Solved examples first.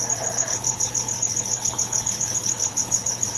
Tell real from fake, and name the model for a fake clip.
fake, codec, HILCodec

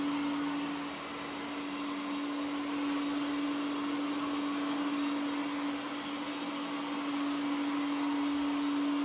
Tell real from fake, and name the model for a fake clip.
real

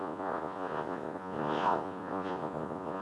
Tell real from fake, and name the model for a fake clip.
fake, vocoder, Vocos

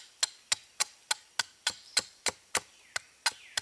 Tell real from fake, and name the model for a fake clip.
real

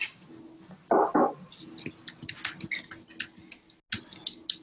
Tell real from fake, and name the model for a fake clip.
real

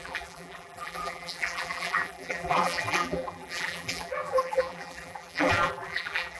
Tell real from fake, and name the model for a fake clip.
fake, vocoder, BigVGAN v2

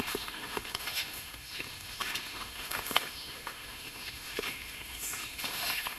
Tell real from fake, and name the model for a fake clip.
fake, autoencoder, DAC-VAE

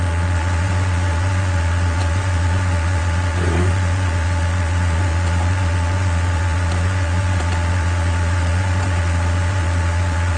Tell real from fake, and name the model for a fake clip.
fake, vocoder, Vocos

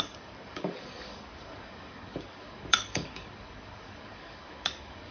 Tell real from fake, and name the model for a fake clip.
fake, codec, DAC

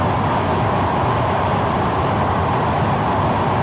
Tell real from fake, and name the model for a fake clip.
real